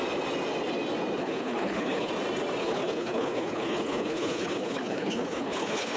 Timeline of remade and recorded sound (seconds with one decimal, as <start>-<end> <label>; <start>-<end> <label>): 0.0-1.2 recorded; 1.2-2.1 remade; 2.1-2.6 recorded; 2.6-6.0 remade

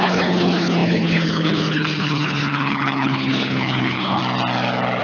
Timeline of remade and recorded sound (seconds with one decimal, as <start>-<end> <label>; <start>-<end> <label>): 0.0-4.2 remade; 4.2-5.0 recorded

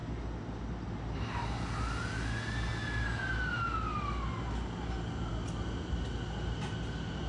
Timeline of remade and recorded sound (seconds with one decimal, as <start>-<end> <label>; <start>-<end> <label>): 0.0-7.3 recorded

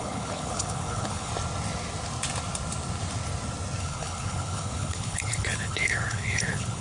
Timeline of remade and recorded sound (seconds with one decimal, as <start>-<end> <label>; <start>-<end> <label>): 0.0-1.3 remade; 1.3-3.8 recorded; 3.8-6.8 remade

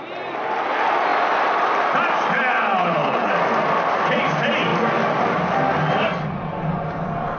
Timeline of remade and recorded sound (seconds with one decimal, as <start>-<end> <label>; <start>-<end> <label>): 0.0-2.8 recorded; 2.8-3.3 remade; 3.3-7.4 recorded

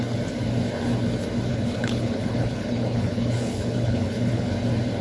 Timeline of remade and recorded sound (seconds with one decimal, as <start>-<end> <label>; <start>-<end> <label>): 0.0-1.5 recorded; 1.5-4.5 remade; 4.5-5.0 recorded